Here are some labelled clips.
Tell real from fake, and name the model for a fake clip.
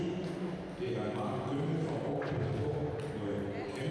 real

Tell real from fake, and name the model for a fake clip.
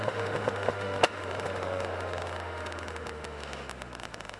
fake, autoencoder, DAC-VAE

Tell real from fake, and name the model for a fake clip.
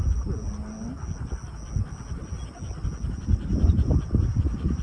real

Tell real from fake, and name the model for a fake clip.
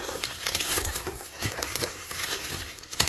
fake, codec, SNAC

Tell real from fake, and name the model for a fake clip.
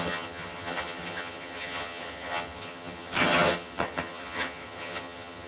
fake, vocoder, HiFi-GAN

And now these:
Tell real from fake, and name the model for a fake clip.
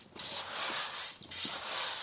real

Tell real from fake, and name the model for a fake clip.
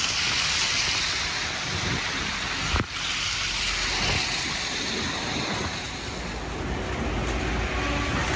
real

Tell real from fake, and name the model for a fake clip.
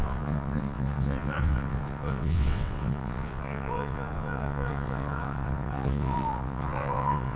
fake, vocoder, WaveNeXt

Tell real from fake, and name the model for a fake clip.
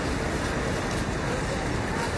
real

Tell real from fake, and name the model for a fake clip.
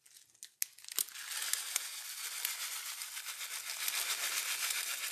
real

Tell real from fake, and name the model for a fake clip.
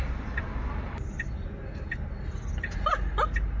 real